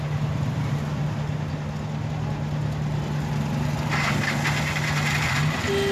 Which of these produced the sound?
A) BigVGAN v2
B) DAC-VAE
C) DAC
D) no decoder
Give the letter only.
D